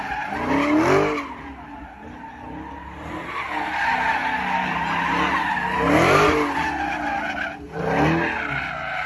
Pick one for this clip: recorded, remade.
recorded